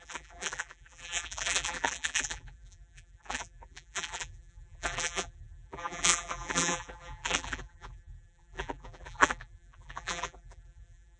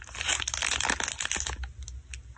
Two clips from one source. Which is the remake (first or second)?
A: first